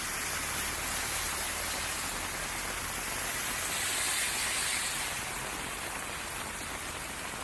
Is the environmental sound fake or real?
real